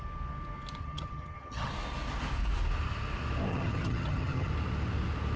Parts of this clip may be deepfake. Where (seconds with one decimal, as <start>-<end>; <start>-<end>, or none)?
0.8-1.7; 3.5-4.5